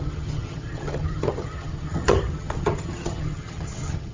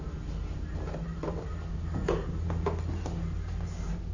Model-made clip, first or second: first